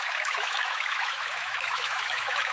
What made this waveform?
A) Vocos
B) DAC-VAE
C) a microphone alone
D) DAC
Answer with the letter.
B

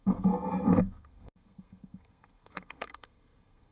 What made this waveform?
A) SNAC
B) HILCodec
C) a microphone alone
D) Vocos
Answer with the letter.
A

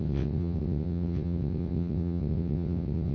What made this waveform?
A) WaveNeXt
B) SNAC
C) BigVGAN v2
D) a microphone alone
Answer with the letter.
A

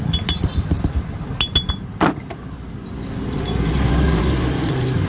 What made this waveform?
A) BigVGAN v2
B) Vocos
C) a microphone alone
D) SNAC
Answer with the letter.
C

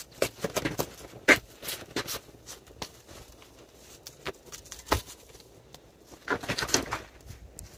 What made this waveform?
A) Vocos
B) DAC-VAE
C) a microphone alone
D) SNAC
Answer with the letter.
C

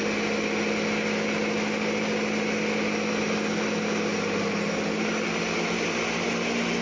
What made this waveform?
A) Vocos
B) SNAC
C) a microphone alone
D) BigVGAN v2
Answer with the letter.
C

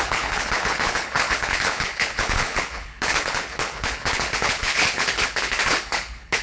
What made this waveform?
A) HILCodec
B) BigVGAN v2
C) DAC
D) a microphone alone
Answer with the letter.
A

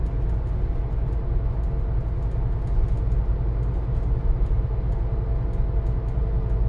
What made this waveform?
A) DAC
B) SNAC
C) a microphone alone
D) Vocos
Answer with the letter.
C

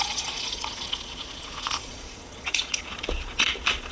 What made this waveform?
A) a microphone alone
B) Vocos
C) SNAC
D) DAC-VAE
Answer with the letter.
B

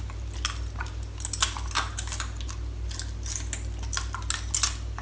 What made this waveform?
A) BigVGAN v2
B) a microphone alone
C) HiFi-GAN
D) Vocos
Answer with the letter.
B